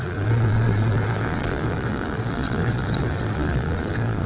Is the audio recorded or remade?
remade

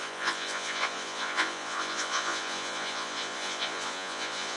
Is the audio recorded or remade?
remade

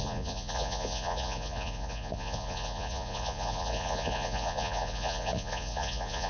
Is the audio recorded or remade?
remade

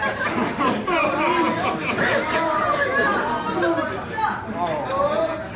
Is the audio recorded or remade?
recorded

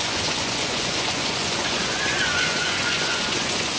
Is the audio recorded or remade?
remade